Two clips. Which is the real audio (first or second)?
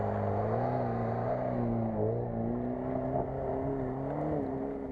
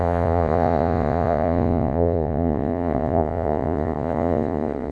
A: first